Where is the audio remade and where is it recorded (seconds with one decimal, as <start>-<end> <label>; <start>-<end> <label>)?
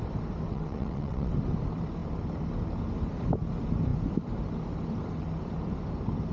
0.0-0.5 recorded; 0.5-1.3 remade; 1.3-6.3 recorded